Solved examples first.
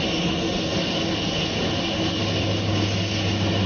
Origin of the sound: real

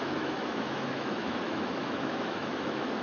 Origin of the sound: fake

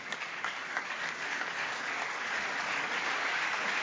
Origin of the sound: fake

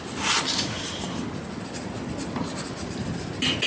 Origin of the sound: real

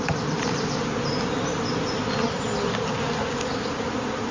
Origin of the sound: real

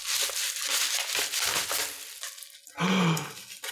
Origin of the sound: real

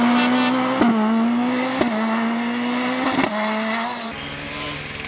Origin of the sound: real